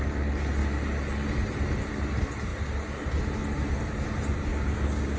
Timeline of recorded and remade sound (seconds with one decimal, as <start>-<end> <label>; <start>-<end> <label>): 0.0-4.5 recorded; 4.5-5.2 remade